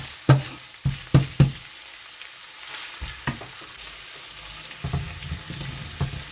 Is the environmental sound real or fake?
real